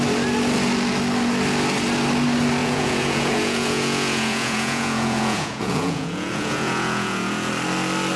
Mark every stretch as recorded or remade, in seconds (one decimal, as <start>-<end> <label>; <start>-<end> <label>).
0.0-2.6 recorded; 2.6-7.5 remade; 7.5-8.2 recorded